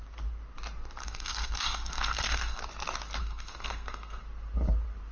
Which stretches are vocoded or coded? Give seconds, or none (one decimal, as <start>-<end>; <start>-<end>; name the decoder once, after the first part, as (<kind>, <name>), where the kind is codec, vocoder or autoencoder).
1.0-2.6 (codec, SNAC); 3.2-4.2